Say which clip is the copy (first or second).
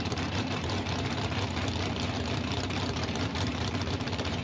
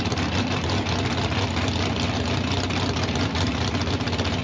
first